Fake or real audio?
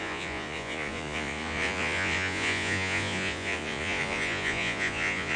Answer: fake